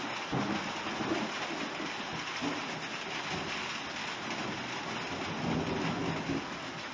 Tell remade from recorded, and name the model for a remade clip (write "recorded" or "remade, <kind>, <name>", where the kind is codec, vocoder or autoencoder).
recorded